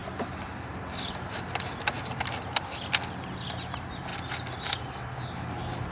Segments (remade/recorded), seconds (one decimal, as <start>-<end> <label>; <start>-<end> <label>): 0.0-5.9 recorded